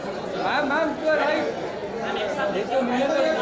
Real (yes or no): yes